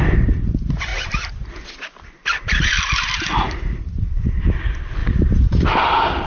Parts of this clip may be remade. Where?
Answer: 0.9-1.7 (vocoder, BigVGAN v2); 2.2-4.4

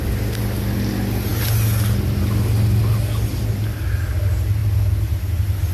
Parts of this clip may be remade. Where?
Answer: none

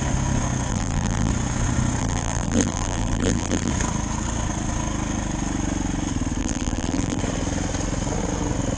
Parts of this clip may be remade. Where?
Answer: 0.7-1.3 (vocoder, BigVGAN v2); 2.0-3.7; 6.4-7.2